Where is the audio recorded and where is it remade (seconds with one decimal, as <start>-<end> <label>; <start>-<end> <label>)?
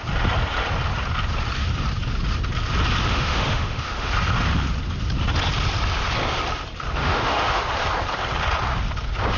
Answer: 0.0-3.1 recorded; 3.1-4.1 remade; 4.1-7.0 recorded; 7.0-7.6 remade; 7.6-9.4 recorded